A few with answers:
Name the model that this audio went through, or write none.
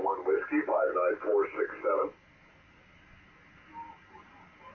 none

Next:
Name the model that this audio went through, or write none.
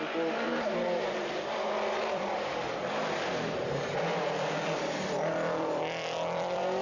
vocoder, BigVGAN v2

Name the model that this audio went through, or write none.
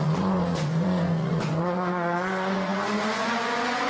vocoder, Vocos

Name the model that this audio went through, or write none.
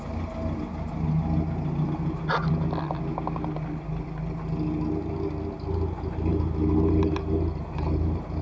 none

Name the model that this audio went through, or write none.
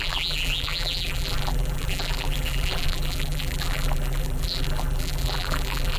vocoder, BigVGAN v2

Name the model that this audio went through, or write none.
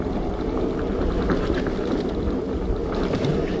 none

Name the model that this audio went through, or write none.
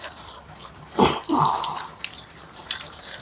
vocoder, BigVGAN v2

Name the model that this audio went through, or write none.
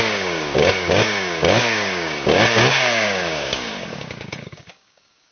codec, DAC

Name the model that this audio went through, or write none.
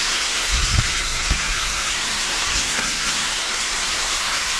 codec, SNAC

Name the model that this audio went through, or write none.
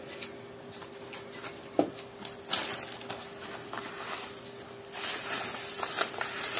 none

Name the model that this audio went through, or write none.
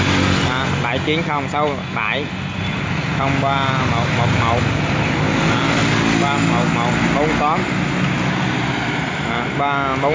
none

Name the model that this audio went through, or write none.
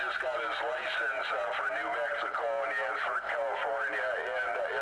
none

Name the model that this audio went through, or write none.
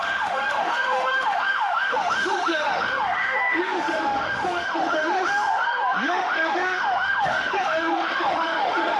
autoencoder, DAC-VAE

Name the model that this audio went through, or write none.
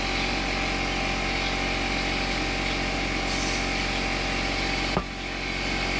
none